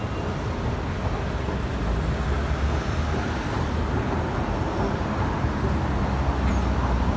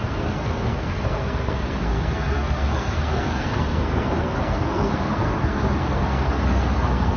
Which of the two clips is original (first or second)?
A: first